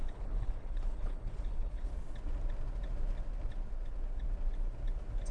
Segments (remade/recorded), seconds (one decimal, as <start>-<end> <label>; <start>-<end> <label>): 0.0-1.9 remade; 1.9-5.3 recorded